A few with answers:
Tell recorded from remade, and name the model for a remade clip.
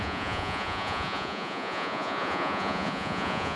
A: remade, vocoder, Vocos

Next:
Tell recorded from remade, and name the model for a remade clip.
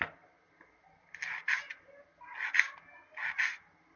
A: recorded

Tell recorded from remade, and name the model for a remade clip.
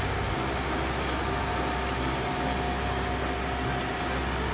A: recorded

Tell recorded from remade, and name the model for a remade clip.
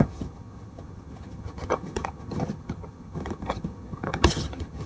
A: remade, vocoder, HiFi-GAN